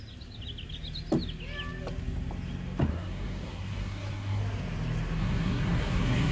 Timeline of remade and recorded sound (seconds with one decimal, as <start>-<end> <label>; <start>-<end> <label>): 0.0-2.9 recorded; 2.9-4.4 remade; 4.4-5.2 recorded; 5.2-6.3 remade